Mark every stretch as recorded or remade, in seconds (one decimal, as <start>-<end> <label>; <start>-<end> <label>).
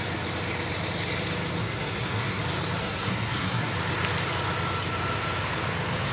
0.0-1.6 recorded; 1.6-2.4 remade; 2.4-2.8 recorded; 2.8-3.7 remade; 3.7-6.1 recorded